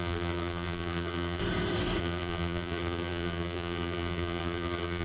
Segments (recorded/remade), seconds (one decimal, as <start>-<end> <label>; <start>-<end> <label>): 0.0-1.4 remade; 1.4-2.0 recorded; 2.0-5.0 remade